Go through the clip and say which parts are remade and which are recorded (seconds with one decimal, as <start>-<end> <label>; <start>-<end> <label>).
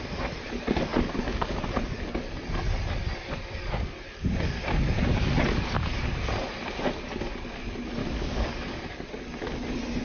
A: 0.0-8.0 recorded; 8.0-8.8 remade; 8.8-10.0 recorded